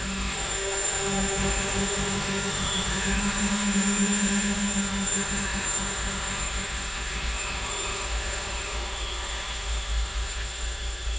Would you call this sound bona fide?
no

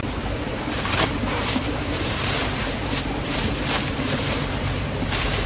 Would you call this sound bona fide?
no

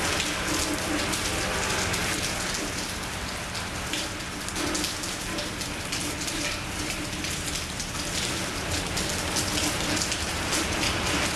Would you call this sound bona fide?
yes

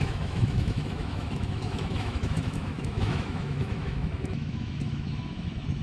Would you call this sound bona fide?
no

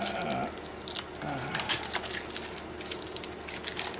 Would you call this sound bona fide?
yes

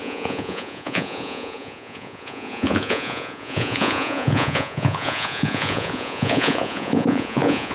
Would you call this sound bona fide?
no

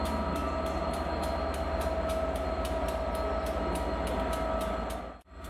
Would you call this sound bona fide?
yes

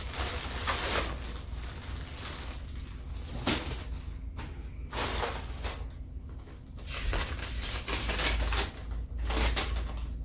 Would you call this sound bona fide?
yes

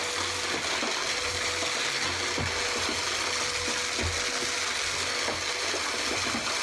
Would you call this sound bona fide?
yes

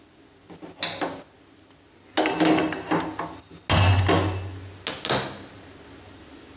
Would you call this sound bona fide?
yes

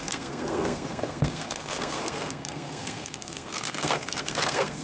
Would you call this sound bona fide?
no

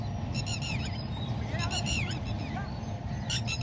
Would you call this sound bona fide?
yes